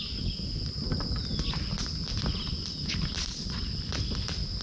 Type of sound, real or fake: real